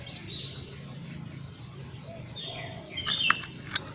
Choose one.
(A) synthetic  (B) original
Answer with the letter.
B